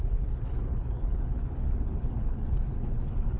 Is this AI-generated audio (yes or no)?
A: yes